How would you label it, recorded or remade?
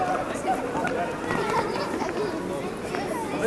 recorded